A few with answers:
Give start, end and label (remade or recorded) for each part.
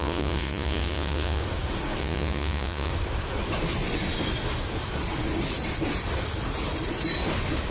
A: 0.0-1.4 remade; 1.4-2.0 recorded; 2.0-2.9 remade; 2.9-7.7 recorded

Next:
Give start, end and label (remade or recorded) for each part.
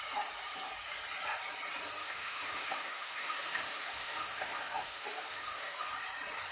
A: 0.0-2.0 recorded; 2.0-5.9 remade; 5.9-6.5 recorded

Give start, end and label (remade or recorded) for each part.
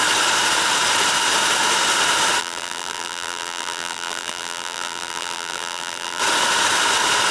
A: 0.0-2.4 recorded; 2.4-6.2 remade; 6.2-7.3 recorded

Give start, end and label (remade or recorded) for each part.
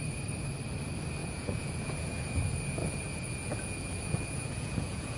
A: 0.0-1.2 recorded; 1.2-2.3 remade; 2.3-2.8 recorded; 2.8-5.2 remade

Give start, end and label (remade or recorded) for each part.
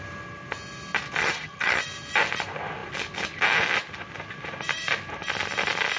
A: 0.0-1.2 recorded; 1.2-1.8 remade; 1.8-6.0 recorded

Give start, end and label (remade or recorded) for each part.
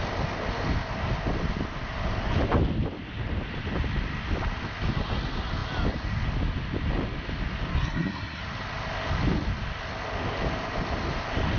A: 0.0-7.7 recorded; 7.7-8.4 remade; 8.4-11.6 recorded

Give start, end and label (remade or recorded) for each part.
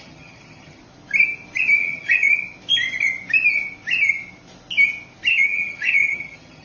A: 0.0-0.8 remade; 0.8-1.8 recorded; 1.8-2.3 remade; 2.3-5.3 recorded; 5.3-6.6 remade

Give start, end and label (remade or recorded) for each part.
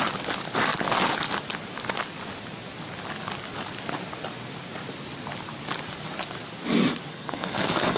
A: 0.0-7.1 recorded; 7.1-8.0 remade